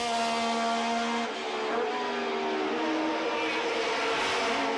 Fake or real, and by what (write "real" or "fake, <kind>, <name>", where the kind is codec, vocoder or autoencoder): real